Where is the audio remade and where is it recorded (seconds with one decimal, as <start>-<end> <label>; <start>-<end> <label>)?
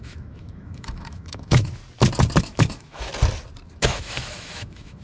0.0-1.8 remade; 1.8-2.4 recorded; 2.4-3.1 remade; 3.1-3.8 recorded; 3.8-5.0 remade